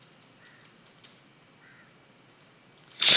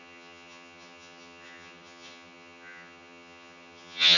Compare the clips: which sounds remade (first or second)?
second